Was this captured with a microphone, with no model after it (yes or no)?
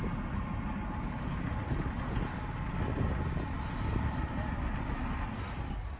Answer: yes